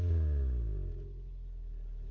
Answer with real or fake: real